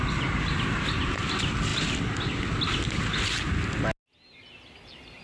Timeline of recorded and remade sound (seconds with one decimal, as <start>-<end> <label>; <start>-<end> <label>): 0.0-5.2 recorded